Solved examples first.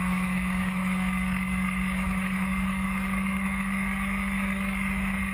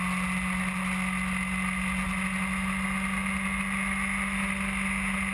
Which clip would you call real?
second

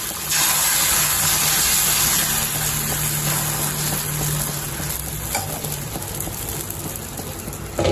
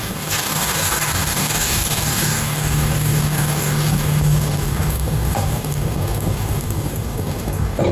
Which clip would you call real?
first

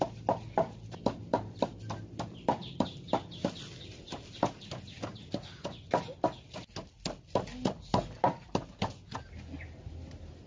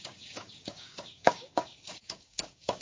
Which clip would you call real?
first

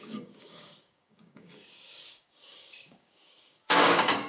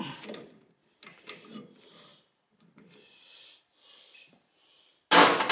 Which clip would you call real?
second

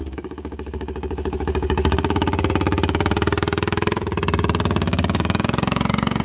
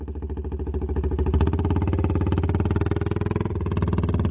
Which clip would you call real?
second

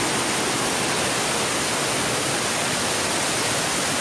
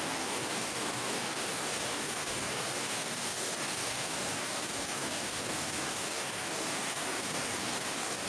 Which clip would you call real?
first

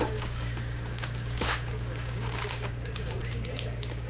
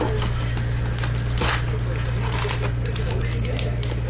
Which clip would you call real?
second